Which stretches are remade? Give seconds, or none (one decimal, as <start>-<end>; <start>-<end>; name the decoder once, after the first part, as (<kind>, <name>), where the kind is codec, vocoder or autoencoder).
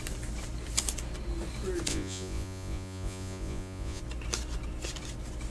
1.9-4.0 (vocoder, Vocos)